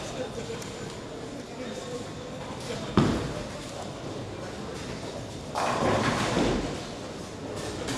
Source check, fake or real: real